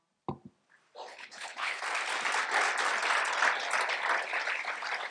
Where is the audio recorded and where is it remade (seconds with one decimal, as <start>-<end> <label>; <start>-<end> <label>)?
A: 0.0-1.1 recorded; 1.1-1.8 remade; 1.8-5.1 recorded